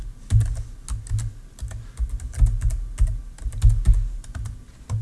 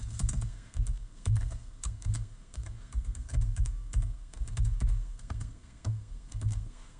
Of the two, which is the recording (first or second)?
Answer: first